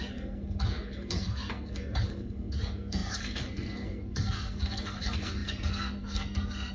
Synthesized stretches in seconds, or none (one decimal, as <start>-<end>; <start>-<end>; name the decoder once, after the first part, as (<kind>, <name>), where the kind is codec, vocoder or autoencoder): 0.0-6.7 (codec, SNAC)